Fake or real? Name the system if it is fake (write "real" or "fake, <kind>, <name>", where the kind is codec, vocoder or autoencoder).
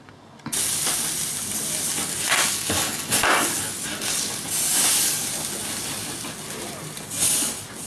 real